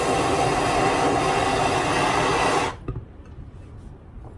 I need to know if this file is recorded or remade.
recorded